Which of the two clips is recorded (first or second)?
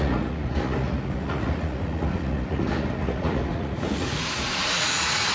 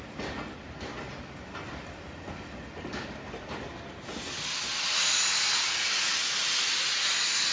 second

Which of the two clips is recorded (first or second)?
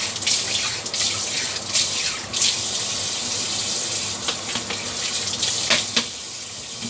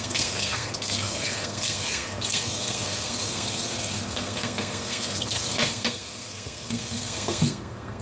first